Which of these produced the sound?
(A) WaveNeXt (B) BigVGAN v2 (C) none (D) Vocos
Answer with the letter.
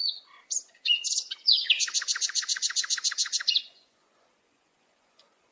D